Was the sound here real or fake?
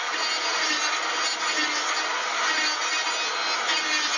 real